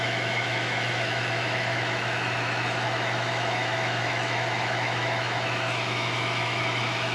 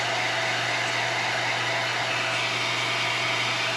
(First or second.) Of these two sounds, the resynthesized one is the first